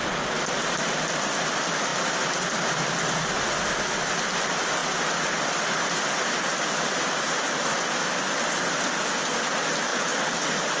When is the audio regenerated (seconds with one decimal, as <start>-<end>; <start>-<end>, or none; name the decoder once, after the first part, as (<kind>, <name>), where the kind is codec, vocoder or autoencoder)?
none